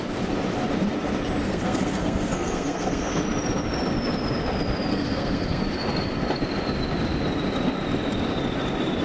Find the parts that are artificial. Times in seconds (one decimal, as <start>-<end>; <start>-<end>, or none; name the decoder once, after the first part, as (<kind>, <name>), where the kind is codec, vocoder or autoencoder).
1.4-3.2 (codec, SNAC); 4.9-5.6